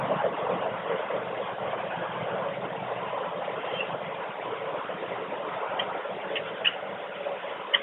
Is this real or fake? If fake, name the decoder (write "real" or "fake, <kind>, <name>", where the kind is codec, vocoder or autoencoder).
real